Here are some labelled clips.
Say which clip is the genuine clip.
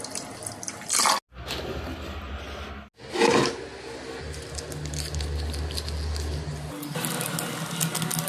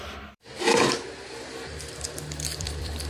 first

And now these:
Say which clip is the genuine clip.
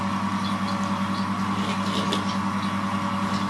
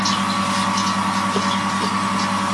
second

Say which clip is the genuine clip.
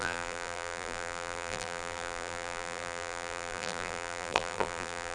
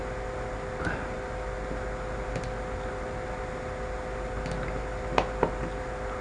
second